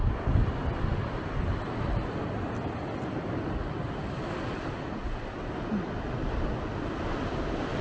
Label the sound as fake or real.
real